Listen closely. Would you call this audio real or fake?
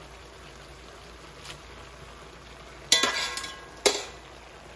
real